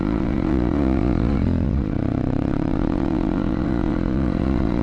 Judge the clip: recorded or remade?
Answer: remade